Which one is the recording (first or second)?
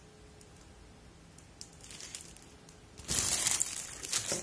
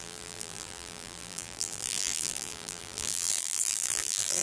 first